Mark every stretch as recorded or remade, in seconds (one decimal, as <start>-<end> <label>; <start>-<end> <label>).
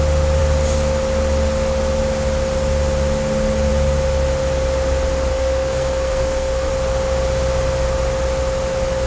0.0-5.3 recorded; 5.3-6.7 remade; 6.7-9.1 recorded